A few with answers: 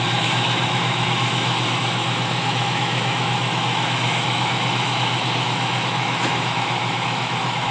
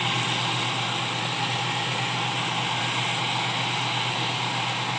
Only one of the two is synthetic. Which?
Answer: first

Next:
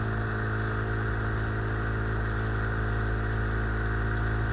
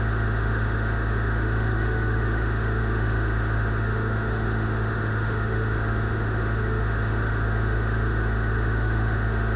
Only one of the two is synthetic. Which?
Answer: second